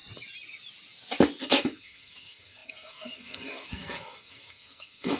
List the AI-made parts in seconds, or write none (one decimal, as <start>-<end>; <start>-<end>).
1.4-5.2